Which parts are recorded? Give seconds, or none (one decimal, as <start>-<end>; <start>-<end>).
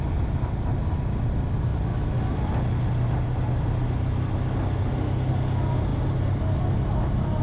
0.0-7.4